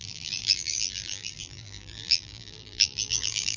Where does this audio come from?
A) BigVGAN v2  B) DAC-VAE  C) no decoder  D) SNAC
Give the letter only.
A